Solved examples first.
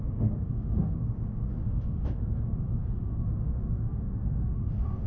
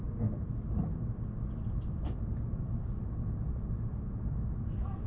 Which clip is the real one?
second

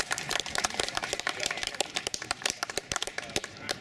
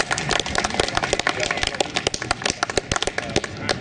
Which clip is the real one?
second